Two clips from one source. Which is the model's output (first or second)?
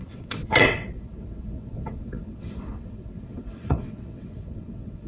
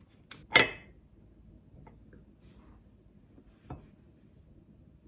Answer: first